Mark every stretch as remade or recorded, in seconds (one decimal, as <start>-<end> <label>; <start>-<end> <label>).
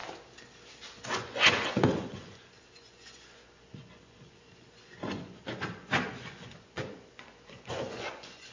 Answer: 0.0-1.1 recorded; 1.1-8.5 remade